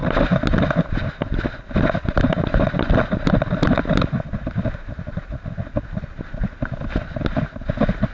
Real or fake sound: real